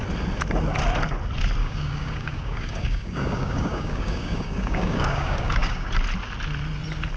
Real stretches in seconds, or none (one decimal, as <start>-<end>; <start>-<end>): 0.0-1.6; 5.9-7.2